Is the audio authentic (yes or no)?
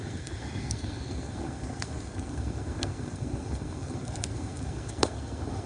no